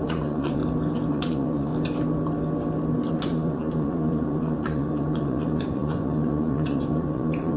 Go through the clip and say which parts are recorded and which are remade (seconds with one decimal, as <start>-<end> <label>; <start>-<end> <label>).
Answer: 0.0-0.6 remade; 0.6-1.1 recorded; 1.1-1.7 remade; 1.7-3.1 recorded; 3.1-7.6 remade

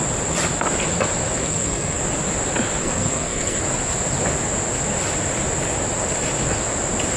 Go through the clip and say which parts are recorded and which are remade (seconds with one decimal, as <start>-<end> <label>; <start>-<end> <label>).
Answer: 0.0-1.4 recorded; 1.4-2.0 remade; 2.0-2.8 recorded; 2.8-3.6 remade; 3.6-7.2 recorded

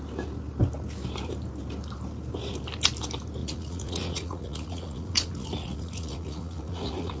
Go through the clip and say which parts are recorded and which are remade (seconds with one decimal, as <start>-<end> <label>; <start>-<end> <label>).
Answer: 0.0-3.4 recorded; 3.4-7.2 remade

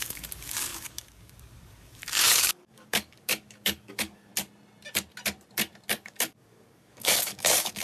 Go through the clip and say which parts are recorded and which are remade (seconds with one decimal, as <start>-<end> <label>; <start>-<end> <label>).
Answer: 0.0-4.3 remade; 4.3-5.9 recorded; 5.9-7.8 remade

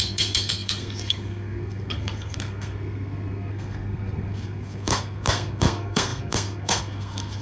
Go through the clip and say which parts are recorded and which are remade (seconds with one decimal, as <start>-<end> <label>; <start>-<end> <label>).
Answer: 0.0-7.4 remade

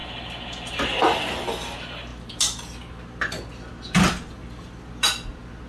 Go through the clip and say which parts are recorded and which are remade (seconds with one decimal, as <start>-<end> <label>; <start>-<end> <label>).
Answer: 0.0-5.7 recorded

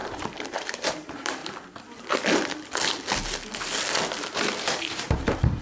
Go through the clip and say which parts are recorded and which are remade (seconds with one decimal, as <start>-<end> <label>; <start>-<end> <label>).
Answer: 0.0-1.4 remade; 1.4-4.8 recorded; 4.8-5.6 remade

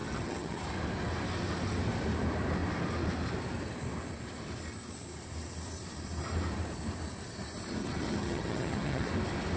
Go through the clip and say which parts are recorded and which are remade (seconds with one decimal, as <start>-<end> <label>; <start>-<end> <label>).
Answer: 0.0-0.6 remade; 0.6-7.8 recorded; 7.8-9.1 remade; 9.1-9.6 recorded